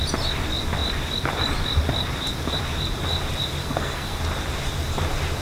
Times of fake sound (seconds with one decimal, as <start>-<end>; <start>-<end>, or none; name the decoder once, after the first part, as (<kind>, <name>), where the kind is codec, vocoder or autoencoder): 3.6-4.2 (codec, SNAC)